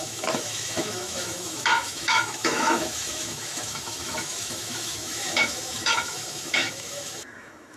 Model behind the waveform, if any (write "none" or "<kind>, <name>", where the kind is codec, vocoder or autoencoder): autoencoder, DAC-VAE